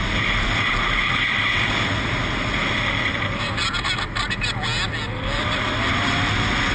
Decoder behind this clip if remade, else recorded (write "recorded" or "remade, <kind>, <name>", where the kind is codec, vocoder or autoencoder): recorded